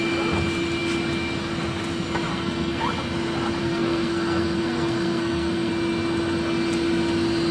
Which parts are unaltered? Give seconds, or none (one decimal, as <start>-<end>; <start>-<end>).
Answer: 0.0-2.3; 2.8-3.6; 5.7-7.5